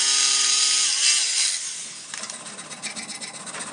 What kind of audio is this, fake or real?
real